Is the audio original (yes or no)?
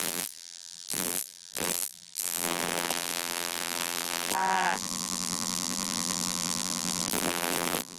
no